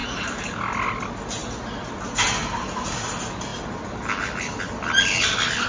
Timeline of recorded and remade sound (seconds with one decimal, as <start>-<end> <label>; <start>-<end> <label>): 0.0-0.6 remade; 0.6-5.7 recorded